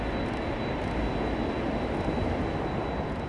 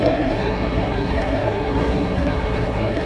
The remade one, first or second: second